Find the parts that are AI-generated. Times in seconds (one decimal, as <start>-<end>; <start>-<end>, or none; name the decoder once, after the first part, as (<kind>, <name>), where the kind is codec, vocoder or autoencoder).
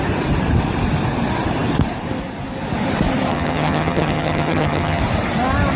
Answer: 3.3-5.0 (vocoder, HiFi-GAN)